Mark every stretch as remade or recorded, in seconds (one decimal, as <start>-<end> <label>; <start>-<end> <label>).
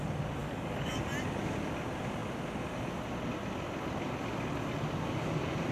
0.0-0.4 recorded; 0.4-1.0 remade; 1.0-5.7 recorded